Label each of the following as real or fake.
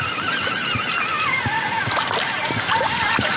real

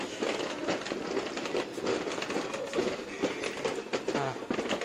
real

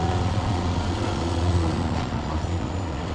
fake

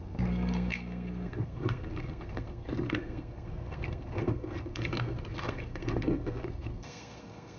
fake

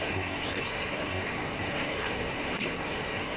fake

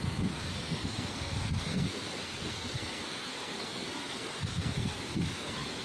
fake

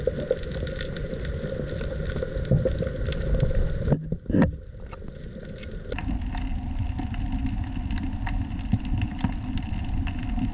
real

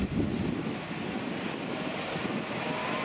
real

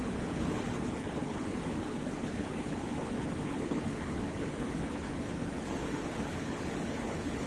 fake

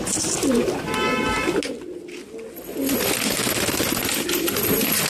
real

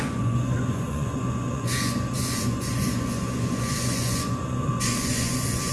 fake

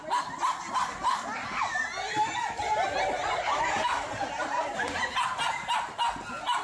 real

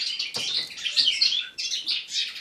real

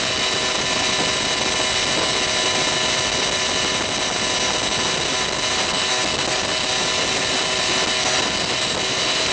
real